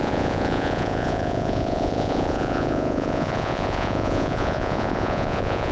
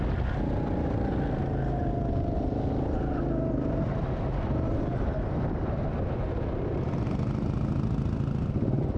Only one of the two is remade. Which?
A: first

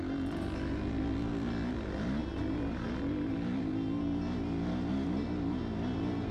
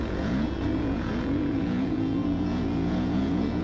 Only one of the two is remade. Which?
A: second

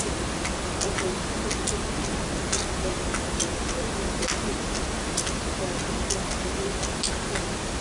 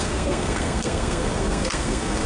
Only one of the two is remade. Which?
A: second